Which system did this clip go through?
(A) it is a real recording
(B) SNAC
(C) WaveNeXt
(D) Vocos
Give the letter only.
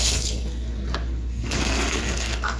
B